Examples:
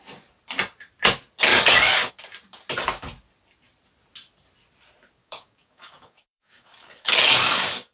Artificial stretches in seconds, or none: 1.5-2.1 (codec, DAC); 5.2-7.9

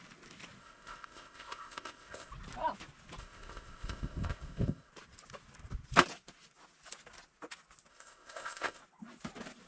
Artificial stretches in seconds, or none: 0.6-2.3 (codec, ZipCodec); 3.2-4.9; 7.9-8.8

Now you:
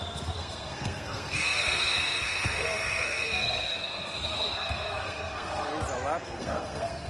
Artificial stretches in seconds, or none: 0.0-5.7 (codec, SNAC); 6.2-7.1

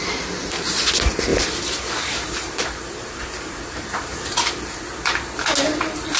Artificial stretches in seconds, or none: 1.3-4.4 (vocoder, BigVGAN v2)

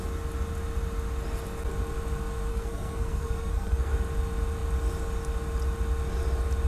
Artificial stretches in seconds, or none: 2.5-3.9 (codec, SNAC)